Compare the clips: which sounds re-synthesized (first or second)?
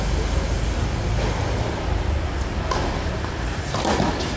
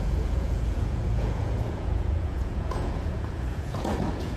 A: second